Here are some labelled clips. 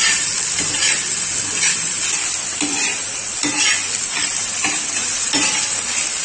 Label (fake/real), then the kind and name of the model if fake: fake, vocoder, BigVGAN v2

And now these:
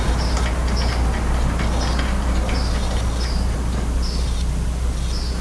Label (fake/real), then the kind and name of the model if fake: real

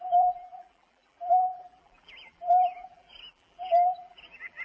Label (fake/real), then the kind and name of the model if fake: fake, vocoder, BigVGAN v2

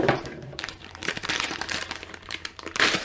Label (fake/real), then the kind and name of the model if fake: fake, vocoder, BigVGAN v2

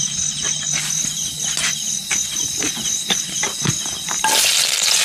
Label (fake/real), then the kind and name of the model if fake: real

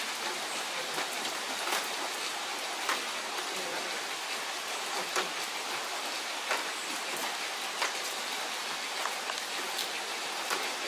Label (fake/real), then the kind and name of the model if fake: real